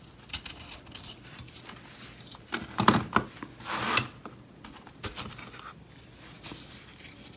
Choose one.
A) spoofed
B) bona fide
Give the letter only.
B